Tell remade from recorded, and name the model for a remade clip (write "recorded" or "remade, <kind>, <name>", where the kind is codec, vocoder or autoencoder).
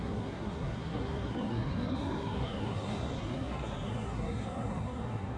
remade, codec, SNAC